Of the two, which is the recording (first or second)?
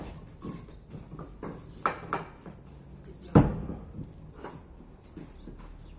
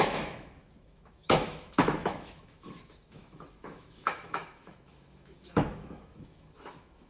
first